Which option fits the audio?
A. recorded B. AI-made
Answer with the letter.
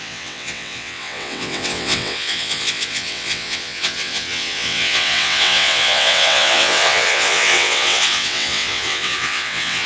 B